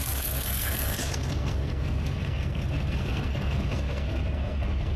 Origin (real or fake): fake